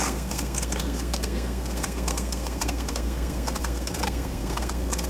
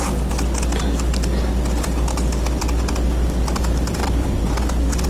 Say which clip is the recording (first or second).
second